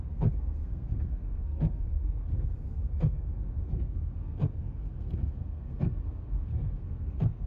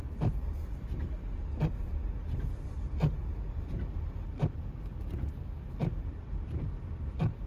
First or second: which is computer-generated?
first